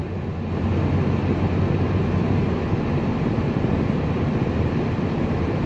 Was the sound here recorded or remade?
recorded